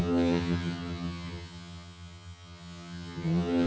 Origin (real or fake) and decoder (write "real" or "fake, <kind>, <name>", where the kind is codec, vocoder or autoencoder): fake, vocoder, HiFi-GAN